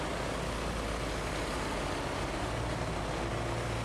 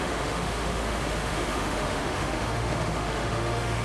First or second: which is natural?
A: first